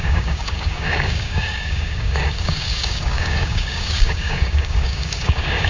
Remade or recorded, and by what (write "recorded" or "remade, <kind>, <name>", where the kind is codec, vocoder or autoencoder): remade, codec, DAC